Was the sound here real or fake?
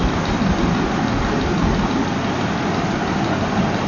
real